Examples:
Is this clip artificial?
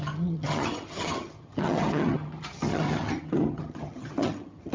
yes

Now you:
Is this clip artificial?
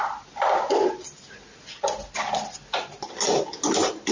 no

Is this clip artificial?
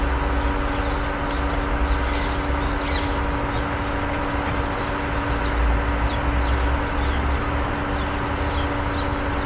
no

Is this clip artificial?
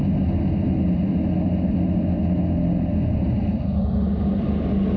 no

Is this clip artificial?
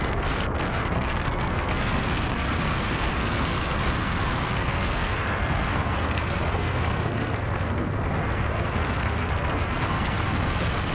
yes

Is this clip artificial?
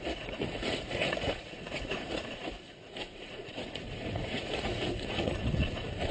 yes